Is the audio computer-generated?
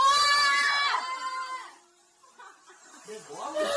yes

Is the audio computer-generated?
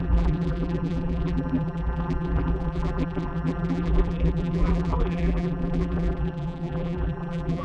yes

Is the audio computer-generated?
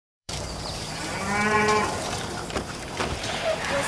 yes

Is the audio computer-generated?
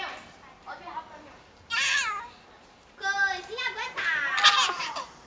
no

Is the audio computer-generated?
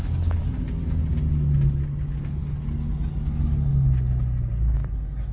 no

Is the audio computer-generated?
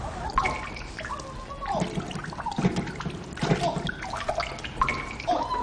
no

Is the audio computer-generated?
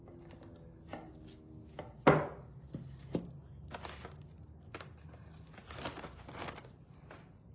no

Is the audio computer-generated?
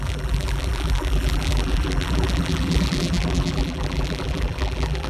yes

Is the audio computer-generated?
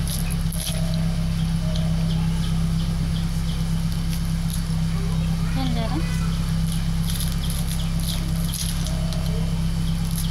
no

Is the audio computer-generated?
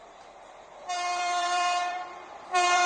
yes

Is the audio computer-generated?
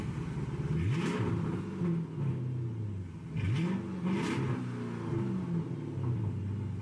no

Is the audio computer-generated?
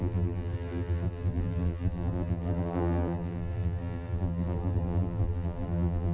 yes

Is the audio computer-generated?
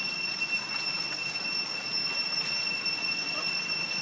no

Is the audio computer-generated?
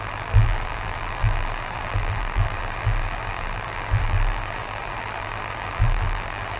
yes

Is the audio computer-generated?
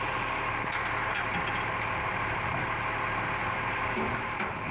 yes